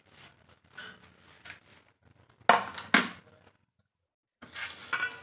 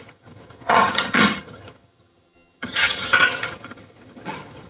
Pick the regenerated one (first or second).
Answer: second